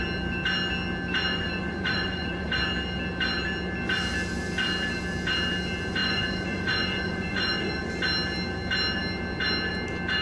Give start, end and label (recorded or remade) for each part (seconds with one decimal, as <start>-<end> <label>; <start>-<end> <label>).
0.0-1.3 recorded; 1.3-2.5 remade; 2.5-6.0 recorded; 6.0-7.9 remade; 7.9-10.2 recorded